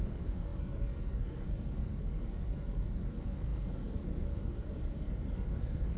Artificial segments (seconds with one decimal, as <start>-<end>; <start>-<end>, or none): 0.0-6.0